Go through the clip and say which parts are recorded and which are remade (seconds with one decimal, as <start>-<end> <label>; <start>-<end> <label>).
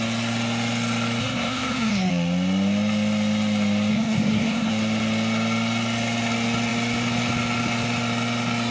0.0-1.2 recorded; 1.2-2.1 remade; 2.1-3.9 recorded; 3.9-4.7 remade; 4.7-8.7 recorded